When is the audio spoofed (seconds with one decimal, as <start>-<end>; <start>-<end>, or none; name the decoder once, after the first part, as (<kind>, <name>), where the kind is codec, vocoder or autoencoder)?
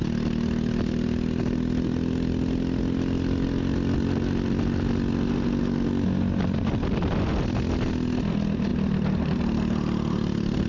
none